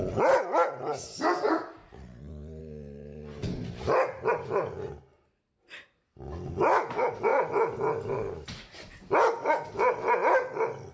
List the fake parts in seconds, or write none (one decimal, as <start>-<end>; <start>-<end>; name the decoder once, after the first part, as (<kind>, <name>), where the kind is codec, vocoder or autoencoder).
1.8-2.6 (vocoder, Vocos)